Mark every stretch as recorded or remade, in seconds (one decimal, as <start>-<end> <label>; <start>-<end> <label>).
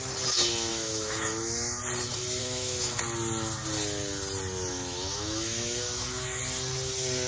0.0-0.7 recorded; 0.7-1.8 remade; 1.8-2.4 recorded; 2.4-3.0 remade; 3.0-4.7 recorded; 4.7-6.4 remade; 6.4-7.3 recorded